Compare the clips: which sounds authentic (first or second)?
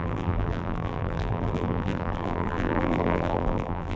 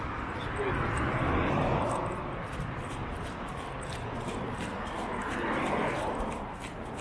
second